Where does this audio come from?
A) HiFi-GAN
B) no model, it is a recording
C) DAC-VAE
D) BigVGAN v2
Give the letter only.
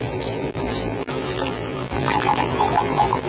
D